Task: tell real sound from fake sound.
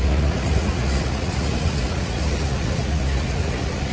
fake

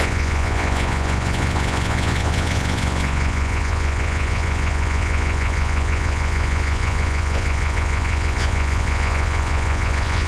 fake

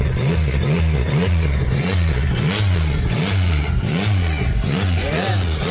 fake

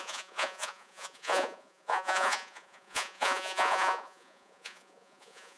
fake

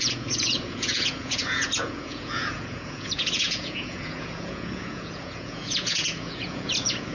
fake